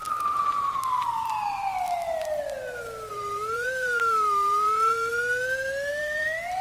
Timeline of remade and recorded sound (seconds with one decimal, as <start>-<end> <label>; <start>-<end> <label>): 0.0-1.7 remade; 1.7-3.1 recorded; 3.1-5.1 remade; 5.1-5.9 recorded; 5.9-6.6 remade